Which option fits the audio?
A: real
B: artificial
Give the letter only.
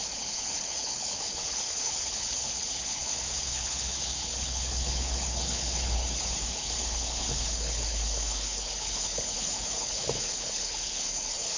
B